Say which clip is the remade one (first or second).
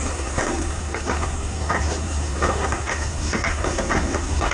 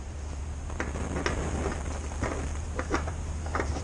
first